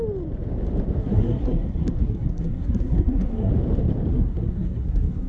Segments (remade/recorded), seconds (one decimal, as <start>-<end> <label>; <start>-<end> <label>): 0.0-1.0 recorded; 1.0-3.5 remade; 3.5-4.1 recorded; 4.1-5.3 remade